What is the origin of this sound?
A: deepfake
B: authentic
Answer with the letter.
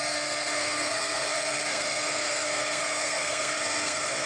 A